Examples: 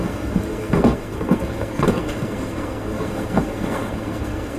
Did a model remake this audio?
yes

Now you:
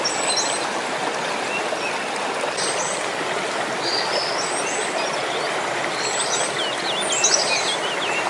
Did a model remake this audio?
no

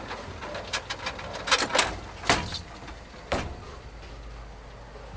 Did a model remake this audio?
no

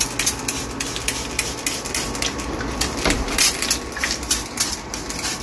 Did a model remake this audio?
no